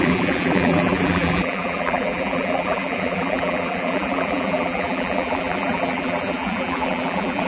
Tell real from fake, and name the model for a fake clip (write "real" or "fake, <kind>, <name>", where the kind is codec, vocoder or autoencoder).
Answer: fake, vocoder, BigVGAN v2